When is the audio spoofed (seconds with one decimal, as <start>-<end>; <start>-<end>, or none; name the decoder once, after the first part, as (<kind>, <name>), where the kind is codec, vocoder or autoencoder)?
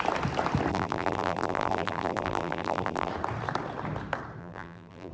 0.7-3.1 (vocoder, BigVGAN v2); 4.4-5.1